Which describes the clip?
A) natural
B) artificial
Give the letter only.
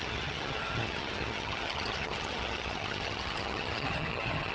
B